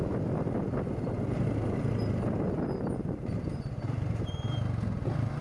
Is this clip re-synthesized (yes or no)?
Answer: no